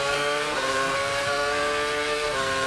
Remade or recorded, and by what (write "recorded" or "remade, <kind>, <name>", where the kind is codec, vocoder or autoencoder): remade, codec, SNAC